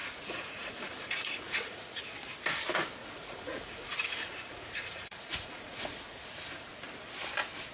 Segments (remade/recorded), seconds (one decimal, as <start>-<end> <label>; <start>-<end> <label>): 0.0-2.0 remade; 2.0-3.0 recorded; 3.0-6.7 remade; 6.7-7.7 recorded